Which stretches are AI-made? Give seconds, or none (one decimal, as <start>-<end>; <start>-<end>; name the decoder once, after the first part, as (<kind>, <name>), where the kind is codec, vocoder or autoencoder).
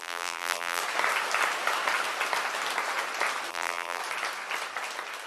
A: 0.0-0.8 (vocoder, BigVGAN v2); 3.5-4.0